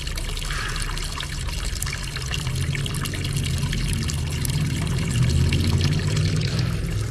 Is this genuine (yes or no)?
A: yes